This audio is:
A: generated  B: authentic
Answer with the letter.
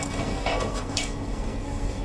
A